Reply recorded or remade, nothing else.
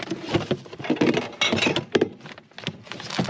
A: recorded